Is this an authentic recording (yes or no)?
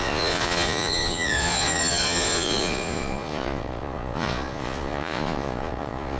no